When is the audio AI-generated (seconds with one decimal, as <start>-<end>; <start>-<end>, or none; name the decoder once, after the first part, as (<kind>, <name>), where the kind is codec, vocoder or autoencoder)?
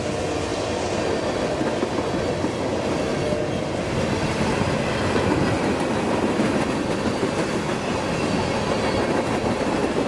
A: none